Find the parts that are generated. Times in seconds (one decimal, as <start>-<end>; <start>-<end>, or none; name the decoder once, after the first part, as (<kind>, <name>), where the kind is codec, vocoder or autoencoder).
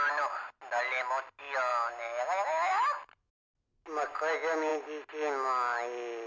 none